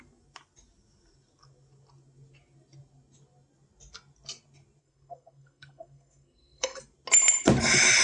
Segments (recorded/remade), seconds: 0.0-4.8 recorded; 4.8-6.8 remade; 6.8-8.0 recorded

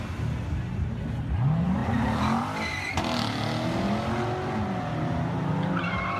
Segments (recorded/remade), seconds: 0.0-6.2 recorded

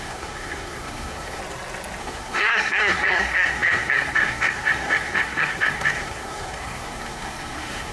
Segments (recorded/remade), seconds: 0.0-1.4 remade; 1.4-2.0 recorded; 2.0-7.9 remade

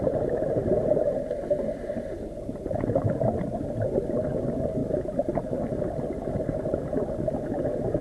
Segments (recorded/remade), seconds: 0.0-8.0 recorded